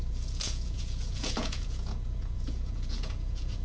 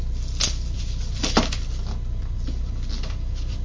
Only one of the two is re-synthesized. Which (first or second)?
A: first